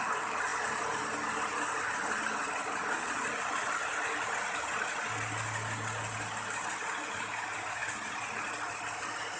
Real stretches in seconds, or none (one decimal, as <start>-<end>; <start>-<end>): 0.0-9.4